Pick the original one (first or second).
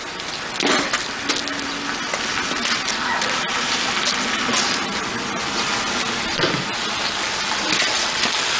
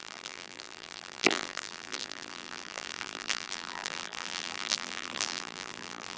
first